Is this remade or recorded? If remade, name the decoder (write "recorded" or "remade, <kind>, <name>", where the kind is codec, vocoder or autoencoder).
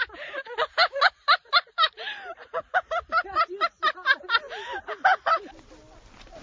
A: recorded